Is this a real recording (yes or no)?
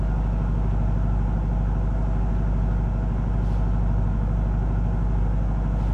yes